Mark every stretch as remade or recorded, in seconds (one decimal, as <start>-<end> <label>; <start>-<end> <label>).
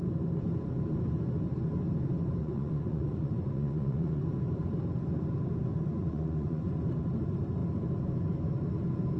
0.0-2.4 recorded; 2.4-4.2 remade; 4.2-5.7 recorded; 5.7-6.6 remade; 6.6-9.2 recorded